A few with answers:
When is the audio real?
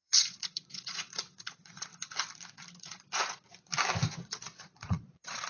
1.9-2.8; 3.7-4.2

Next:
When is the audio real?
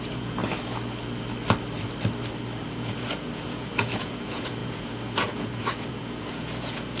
0.4-2.7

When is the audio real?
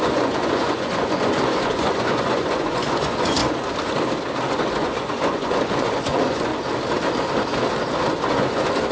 3.4-4.5; 6.5-8.3